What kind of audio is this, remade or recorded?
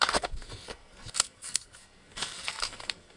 remade